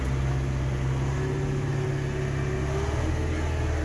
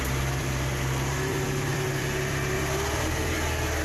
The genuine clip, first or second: first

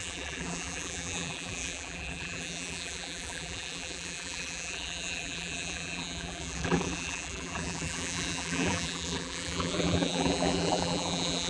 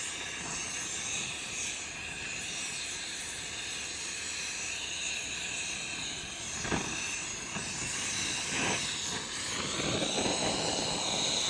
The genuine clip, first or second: second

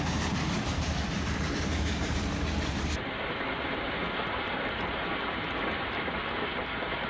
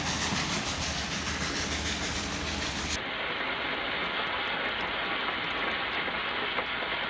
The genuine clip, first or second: second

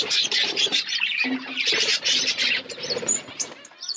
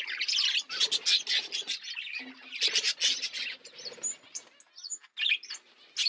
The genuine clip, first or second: second